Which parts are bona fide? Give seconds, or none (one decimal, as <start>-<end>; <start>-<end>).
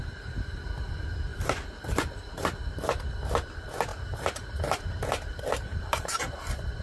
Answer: 0.0-1.3; 2.4-3.9; 4.8-5.7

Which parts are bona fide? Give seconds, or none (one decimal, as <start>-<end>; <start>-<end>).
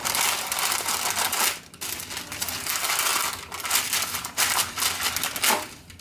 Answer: 0.0-6.0